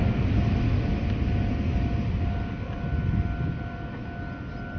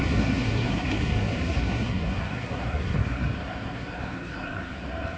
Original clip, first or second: first